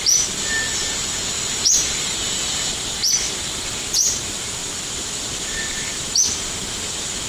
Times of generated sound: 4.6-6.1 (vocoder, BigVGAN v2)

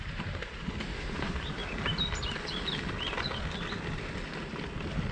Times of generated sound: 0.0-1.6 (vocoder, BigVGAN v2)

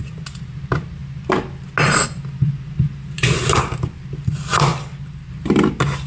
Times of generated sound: none

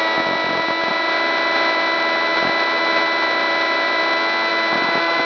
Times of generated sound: 0.9-4.0 (vocoder, BigVGAN v2); 4.5-5.2

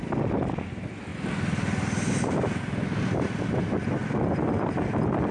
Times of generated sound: 1.1-2.6 (vocoder, BigVGAN v2)

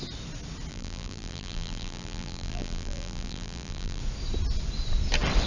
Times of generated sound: 0.7-4.0 (vocoder, BigVGAN v2)

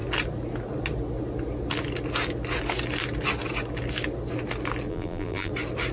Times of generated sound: 4.9-5.5 (vocoder, BigVGAN v2)

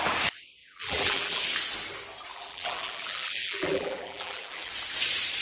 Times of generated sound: 0.6-1.4 (vocoder, BigVGAN v2); 2.3-4.7